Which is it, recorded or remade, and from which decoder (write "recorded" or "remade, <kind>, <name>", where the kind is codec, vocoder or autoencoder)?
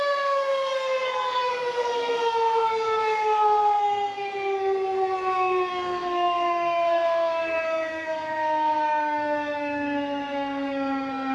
remade, codec, SNAC